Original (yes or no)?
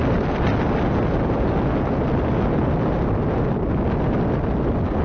yes